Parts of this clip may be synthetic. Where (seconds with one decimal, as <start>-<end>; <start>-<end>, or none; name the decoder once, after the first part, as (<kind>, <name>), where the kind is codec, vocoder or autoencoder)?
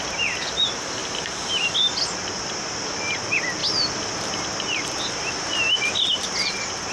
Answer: none